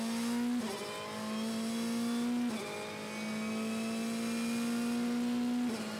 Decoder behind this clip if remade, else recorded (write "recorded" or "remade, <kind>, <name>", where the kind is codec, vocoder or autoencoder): recorded